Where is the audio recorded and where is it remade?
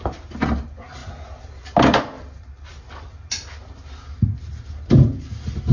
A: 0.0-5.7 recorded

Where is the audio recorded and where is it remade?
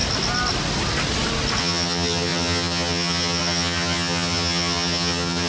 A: 0.0-1.6 recorded; 1.6-5.5 remade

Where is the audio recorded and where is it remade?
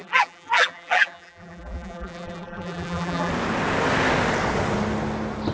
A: 0.0-3.3 remade; 3.3-5.5 recorded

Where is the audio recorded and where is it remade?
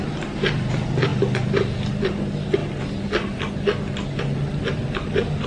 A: 0.0-5.5 recorded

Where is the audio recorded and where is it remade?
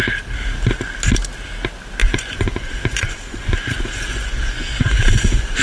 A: 0.0-2.0 recorded; 2.0-5.6 remade